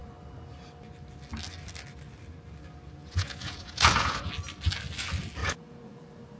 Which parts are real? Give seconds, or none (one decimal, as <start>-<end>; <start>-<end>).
0.0-3.0; 4.3-5.4; 6.0-6.4